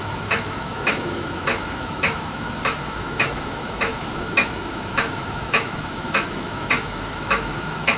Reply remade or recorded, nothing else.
remade